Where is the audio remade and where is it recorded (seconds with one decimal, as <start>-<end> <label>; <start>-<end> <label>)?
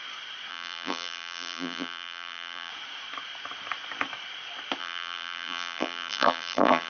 0.0-0.5 recorded; 0.5-2.7 remade; 2.7-4.8 recorded; 4.8-6.9 remade